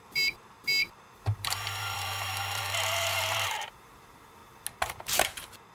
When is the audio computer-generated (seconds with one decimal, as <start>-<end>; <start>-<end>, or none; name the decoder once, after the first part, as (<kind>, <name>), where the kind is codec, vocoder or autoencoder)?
0.0-4.4 (vocoder, BigVGAN v2); 5.0-5.7